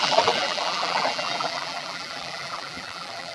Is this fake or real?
fake